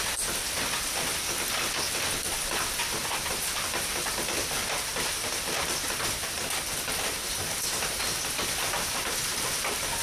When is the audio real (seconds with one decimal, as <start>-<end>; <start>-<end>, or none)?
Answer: 0.0-3.0; 3.9-10.0